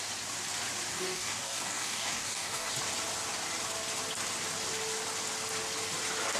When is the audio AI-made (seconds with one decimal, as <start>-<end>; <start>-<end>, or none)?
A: 0.9-2.7